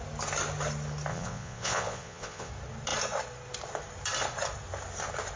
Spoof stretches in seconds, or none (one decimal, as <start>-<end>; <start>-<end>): 1.1-2.5